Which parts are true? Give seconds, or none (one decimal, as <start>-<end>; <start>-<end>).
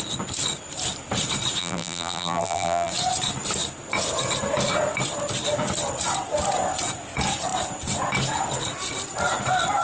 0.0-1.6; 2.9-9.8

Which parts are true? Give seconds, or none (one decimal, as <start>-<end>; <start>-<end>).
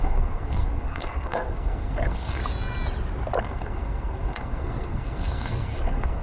2.4-3.4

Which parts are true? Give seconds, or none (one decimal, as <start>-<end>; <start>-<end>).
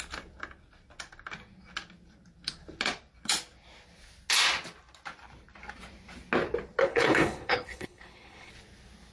0.0-6.8; 8.5-9.1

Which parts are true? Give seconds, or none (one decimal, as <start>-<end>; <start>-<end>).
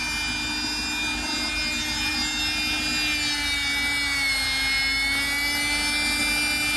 0.0-6.8